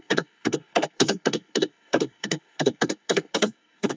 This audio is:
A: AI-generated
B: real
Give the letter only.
A